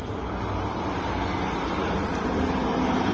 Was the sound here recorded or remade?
recorded